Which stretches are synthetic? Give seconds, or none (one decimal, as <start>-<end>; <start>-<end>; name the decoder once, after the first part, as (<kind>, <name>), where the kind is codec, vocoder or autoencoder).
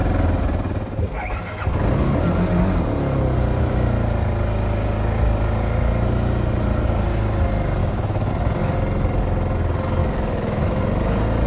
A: 7.8-8.3 (autoencoder, DAC-VAE); 10.0-10.8